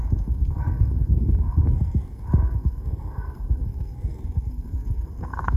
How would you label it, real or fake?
fake